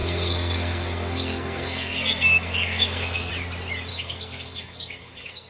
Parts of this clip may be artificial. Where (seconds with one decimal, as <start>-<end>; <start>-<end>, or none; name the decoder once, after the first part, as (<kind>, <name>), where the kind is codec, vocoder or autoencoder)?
0.0-3.3 (codec, SNAC); 3.9-5.5